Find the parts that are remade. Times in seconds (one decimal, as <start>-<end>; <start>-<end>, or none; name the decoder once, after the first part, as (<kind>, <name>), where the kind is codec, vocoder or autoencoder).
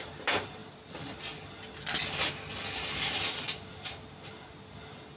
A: none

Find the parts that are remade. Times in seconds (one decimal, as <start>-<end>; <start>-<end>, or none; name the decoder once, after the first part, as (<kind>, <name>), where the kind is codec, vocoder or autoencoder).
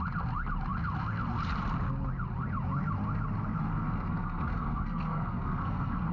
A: 3.6-6.1 (codec, SNAC)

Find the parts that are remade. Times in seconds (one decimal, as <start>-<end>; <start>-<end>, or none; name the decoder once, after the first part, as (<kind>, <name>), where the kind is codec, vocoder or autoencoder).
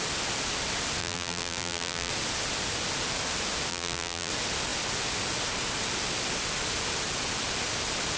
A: 1.0-2.1 (vocoder, BigVGAN v2); 3.7-4.3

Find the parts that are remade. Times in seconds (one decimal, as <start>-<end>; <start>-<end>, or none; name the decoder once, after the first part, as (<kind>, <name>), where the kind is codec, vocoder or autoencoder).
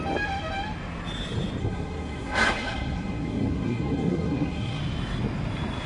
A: 1.6-4.8 (codec, SNAC)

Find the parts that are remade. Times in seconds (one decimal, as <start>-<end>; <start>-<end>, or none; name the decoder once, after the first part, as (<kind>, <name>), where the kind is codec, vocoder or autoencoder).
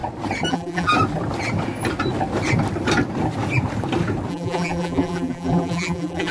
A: 0.5-0.9 (vocoder, BigVGAN v2); 4.3-6.3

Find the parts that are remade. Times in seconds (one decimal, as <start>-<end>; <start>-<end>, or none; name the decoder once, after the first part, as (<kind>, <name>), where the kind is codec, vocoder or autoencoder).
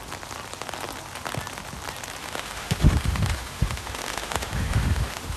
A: 2.2-5.4 (autoencoder, DAC-VAE)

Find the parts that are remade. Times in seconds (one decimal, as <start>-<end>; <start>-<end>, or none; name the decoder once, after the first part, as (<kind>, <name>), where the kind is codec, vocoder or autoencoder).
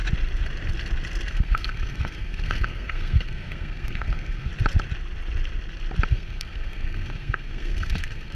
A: 1.3-4.5 (codec, SNAC); 6.1-8.3